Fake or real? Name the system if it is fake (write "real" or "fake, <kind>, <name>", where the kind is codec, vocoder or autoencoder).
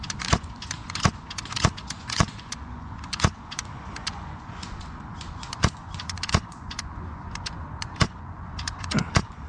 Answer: fake, vocoder, Vocos